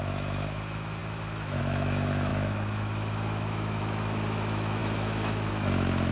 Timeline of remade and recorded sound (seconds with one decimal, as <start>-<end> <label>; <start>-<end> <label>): 0.0-6.1 remade

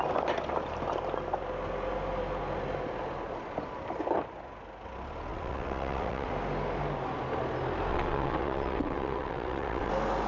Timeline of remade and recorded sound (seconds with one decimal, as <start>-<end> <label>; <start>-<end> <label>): 0.0-5.3 recorded; 5.3-6.3 remade; 6.3-7.9 recorded; 7.9-9.9 remade; 9.9-10.3 recorded

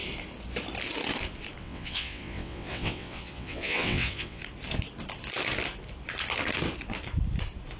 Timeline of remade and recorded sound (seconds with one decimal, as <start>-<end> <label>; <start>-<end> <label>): 0.0-1.6 recorded; 1.6-4.4 remade; 4.4-7.8 recorded

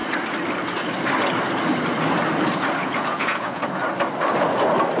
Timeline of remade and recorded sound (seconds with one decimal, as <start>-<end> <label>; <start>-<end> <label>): 0.0-2.8 recorded; 2.8-3.8 remade; 3.8-5.0 recorded

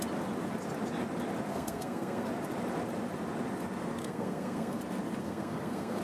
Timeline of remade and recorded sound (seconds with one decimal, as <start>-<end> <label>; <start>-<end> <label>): 0.0-1.5 recorded; 1.5-2.3 remade; 2.3-4.0 recorded; 4.0-4.8 remade; 4.8-5.2 recorded; 5.2-6.0 remade

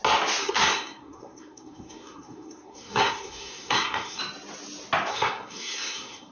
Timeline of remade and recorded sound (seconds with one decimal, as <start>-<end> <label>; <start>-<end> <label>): 0.0-0.4 recorded; 0.4-4.2 remade; 4.2-5.1 recorded; 5.1-6.3 remade

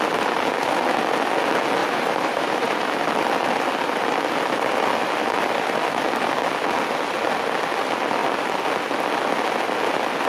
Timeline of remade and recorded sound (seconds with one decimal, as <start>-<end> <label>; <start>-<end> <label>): 0.0-1.8 recorded; 1.8-2.8 remade; 2.8-10.3 recorded

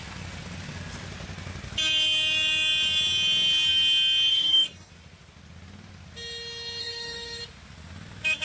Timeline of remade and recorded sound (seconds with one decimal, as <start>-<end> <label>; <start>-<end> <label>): 0.0-4.3 recorded; 4.3-4.9 remade; 4.9-6.8 recorded; 6.8-7.4 remade; 7.4-8.4 recorded